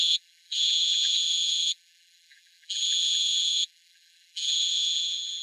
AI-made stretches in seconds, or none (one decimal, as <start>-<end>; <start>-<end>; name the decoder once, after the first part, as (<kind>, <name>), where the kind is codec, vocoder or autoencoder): 0.0-5.4 (vocoder, BigVGAN v2)